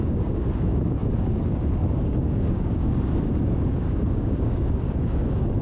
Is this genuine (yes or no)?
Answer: no